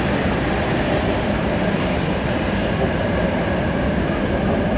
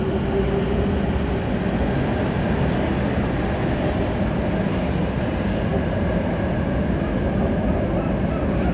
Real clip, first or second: second